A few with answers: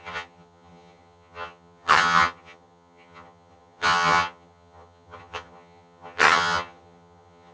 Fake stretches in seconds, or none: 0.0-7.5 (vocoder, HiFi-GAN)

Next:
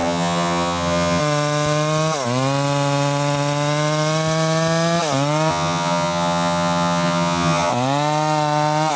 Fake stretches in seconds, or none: 0.0-1.2 (vocoder, HiFi-GAN); 5.5-7.7

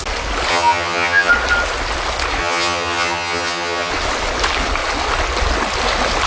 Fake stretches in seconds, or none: 0.5-1.3 (vocoder, HiFi-GAN); 2.4-3.9